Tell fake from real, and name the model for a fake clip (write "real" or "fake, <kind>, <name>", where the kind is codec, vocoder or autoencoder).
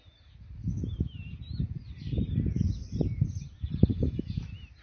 real